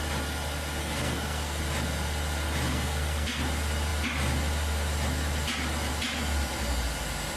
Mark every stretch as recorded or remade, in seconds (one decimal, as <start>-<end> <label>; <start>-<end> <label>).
0.0-0.8 recorded; 0.8-1.6 remade; 1.6-2.7 recorded; 2.7-3.4 remade; 3.4-7.4 recorded